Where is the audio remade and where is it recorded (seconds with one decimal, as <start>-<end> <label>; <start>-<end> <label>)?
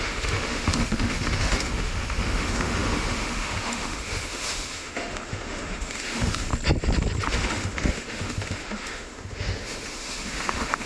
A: 0.0-6.5 remade; 6.5-7.3 recorded; 7.3-10.9 remade